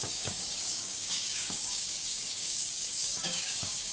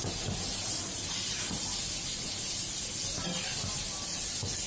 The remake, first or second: first